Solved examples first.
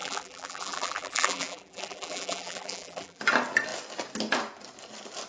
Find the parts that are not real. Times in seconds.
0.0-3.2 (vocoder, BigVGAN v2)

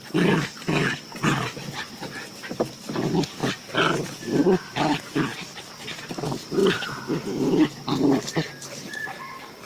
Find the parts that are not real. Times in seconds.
none